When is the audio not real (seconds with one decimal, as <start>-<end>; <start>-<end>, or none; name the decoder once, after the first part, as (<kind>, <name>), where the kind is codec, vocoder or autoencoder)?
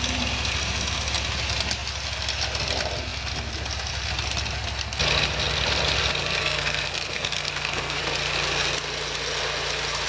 6.4-8.0 (codec, SNAC)